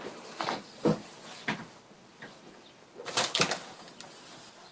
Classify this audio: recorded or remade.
recorded